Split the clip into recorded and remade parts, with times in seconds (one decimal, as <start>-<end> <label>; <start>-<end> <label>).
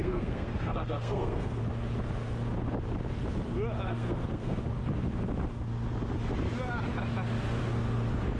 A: 0.0-1.6 remade; 1.6-3.9 recorded; 3.9-4.6 remade; 4.6-8.4 recorded